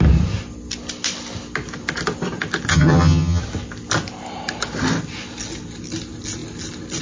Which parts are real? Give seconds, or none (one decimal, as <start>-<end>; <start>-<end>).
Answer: 0.0-2.7; 3.4-7.0